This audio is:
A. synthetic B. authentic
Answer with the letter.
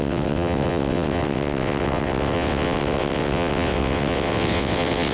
A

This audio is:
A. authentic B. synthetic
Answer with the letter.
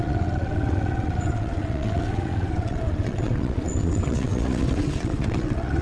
B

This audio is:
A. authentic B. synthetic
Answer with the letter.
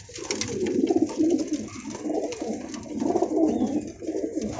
A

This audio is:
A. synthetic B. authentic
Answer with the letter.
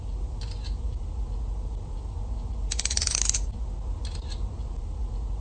B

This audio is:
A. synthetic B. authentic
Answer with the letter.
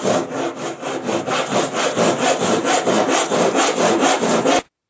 B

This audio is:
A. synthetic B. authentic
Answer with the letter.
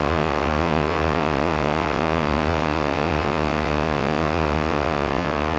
A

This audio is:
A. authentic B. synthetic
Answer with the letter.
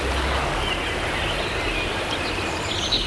A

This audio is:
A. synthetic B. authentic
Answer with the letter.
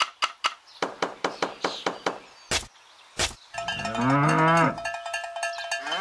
B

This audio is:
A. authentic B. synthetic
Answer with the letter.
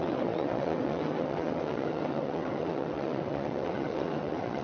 B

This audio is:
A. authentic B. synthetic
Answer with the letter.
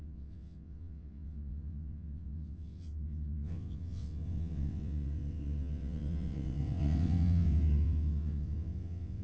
B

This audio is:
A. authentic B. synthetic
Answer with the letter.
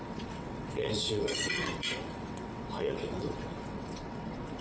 B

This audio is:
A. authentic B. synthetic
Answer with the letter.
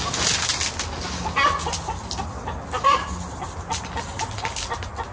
A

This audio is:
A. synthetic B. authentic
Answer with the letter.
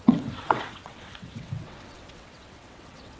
A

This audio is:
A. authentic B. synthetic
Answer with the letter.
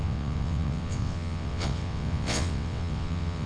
B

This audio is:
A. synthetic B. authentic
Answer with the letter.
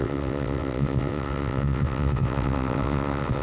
A